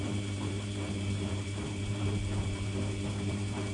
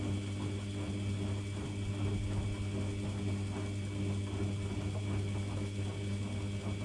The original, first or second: second